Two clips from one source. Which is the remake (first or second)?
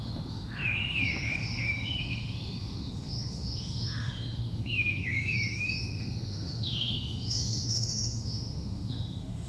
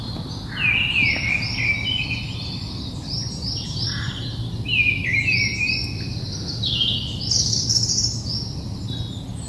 first